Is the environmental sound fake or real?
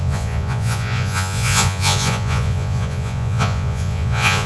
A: fake